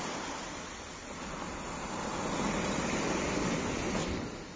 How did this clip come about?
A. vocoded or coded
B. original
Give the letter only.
B